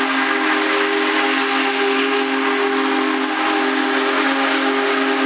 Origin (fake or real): real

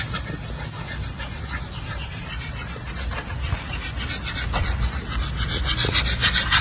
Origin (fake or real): real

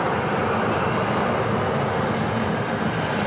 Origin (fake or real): real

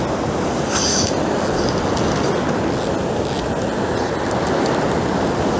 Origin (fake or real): real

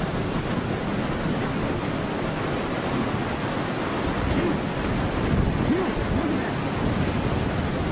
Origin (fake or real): real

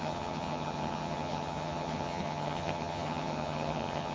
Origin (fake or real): fake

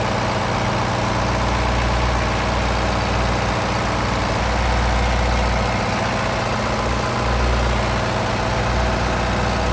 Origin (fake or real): real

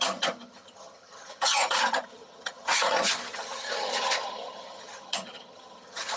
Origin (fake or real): fake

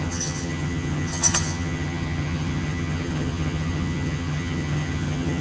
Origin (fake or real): fake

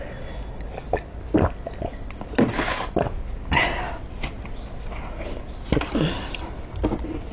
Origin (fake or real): real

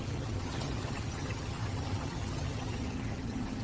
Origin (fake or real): fake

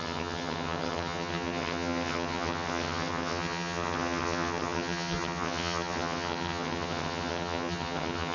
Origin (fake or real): fake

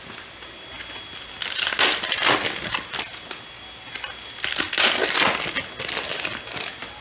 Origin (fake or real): real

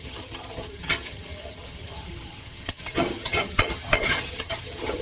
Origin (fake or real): fake